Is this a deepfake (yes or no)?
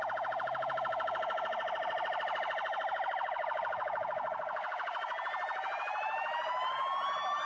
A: no